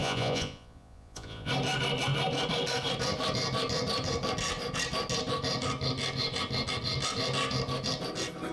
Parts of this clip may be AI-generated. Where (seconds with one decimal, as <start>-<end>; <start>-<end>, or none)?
0.0-1.5